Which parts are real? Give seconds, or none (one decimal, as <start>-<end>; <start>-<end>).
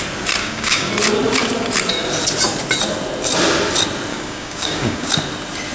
0.0-0.4; 0.9-4.1; 5.1-5.7